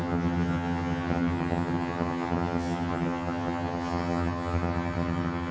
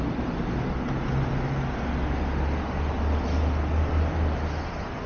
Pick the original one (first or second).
second